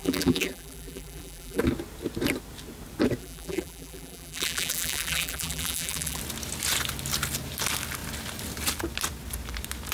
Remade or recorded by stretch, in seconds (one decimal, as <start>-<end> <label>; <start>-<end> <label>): 0.0-1.6 remade; 1.6-3.2 recorded; 3.2-6.2 remade; 6.2-9.9 recorded